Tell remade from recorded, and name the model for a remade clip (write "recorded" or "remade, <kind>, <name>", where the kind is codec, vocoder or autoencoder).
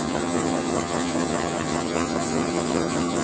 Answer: remade, vocoder, HiFi-GAN